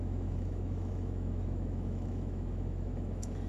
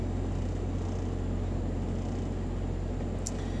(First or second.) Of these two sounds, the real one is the second